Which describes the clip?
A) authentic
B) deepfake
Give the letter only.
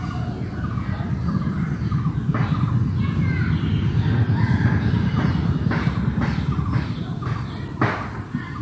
A